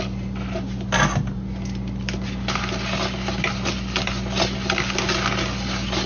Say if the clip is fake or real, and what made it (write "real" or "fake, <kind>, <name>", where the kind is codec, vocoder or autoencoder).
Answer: real